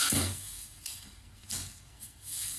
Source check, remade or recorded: remade